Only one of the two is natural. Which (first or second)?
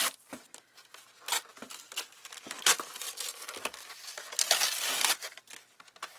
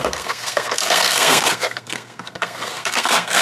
first